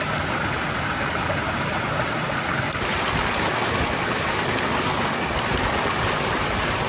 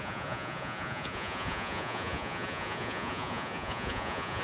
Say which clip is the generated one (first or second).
second